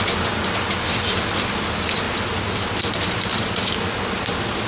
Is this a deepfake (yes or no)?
no